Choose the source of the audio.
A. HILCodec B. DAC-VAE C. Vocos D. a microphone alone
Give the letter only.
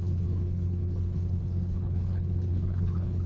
A